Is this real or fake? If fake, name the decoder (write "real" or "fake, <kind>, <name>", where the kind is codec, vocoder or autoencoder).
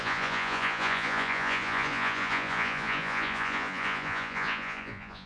fake, vocoder, Vocos